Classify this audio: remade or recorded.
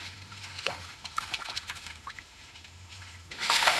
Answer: remade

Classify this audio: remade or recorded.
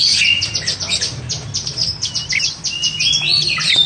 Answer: recorded